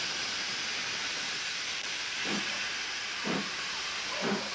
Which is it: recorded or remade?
remade